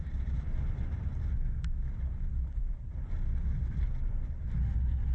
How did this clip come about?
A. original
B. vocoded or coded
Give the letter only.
A